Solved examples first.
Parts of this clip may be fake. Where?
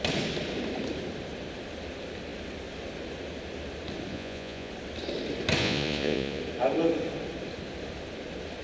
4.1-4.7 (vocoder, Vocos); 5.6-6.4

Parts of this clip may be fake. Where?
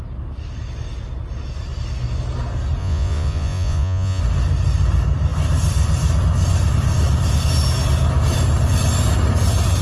2.8-4.2 (vocoder, Vocos)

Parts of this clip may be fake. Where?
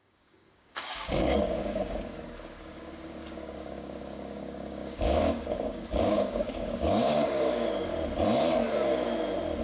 0.0-7.9 (codec, DAC)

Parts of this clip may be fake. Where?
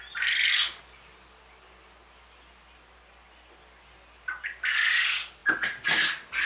none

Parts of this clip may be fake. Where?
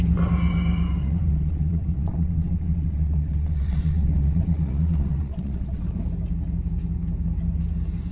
1.0-5.8 (vocoder, WaveNeXt)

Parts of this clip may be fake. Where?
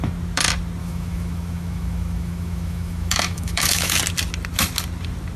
0.8-4.0 (autoencoder, DAC-VAE)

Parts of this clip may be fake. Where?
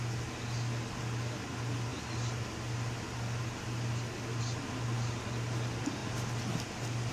1.9-4.4 (vocoder, BigVGAN v2)